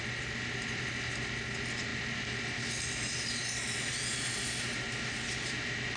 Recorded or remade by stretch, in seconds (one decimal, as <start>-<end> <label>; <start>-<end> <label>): 0.0-6.0 recorded